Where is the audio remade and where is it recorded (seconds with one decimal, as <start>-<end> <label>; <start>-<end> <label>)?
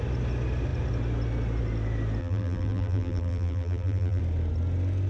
0.0-2.2 recorded; 2.2-4.2 remade; 4.2-5.1 recorded